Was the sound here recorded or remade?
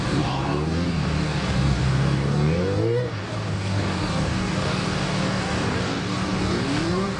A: remade